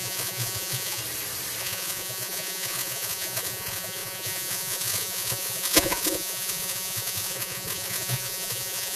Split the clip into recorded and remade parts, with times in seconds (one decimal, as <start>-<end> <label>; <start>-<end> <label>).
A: 0.0-1.0 remade; 1.0-1.6 recorded; 1.6-9.0 remade